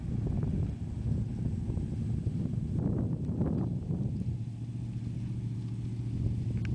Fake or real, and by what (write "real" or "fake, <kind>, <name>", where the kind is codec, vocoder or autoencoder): real